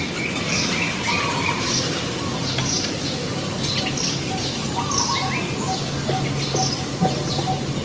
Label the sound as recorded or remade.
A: recorded